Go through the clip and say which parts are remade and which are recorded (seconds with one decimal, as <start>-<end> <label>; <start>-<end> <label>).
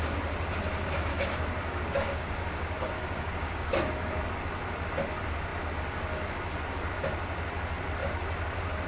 0.0-1.1 recorded; 1.1-4.3 remade; 4.3-8.9 recorded